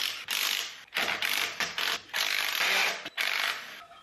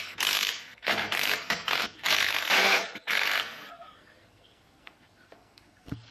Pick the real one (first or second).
first